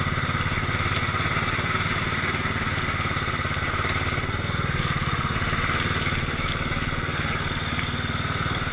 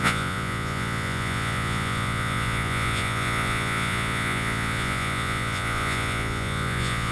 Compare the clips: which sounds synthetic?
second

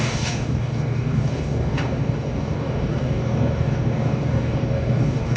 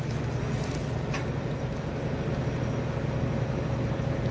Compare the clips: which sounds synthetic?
first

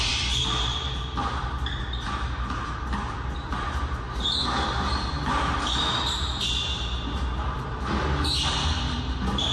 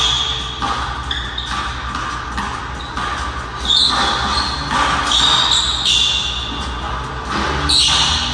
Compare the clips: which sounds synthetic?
first